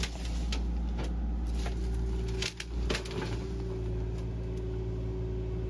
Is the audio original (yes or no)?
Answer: yes